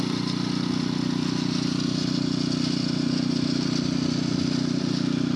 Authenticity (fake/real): real